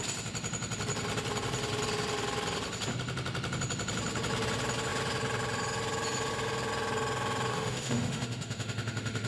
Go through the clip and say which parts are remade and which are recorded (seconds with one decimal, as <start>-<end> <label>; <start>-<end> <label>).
0.0-7.5 recorded; 7.5-9.3 remade